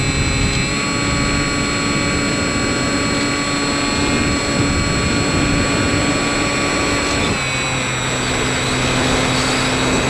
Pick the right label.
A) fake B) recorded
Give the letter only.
B